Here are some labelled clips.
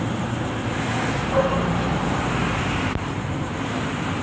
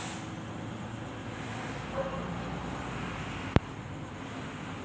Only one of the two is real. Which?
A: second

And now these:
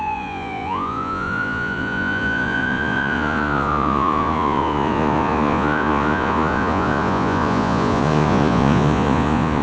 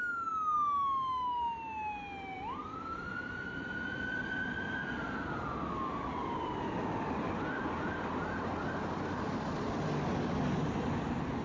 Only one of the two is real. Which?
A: second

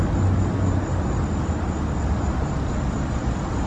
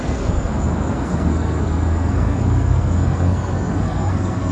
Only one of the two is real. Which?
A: first